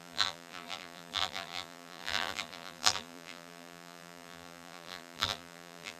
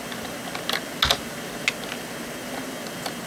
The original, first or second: second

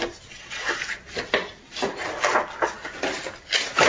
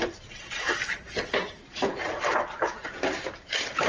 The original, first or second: first